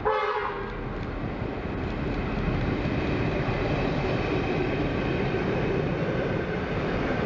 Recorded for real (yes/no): yes